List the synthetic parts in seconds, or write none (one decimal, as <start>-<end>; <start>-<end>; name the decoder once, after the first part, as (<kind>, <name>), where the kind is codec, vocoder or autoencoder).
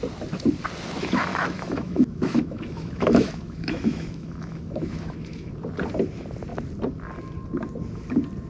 1.3-5.5 (autoencoder, DAC-VAE)